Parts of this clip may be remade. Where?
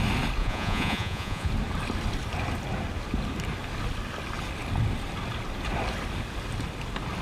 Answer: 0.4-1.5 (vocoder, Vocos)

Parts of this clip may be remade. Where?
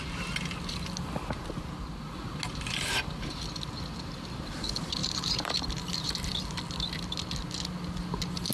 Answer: 5.0-6.3 (vocoder, BigVGAN v2)